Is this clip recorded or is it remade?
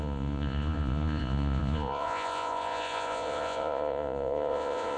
remade